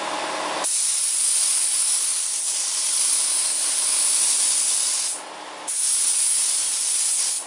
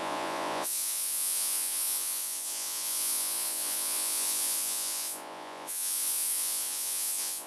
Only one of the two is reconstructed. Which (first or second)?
second